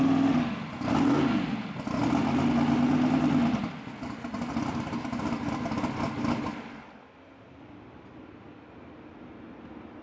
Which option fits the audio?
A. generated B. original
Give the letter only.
B